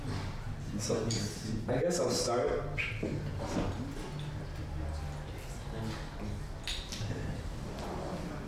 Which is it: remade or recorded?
recorded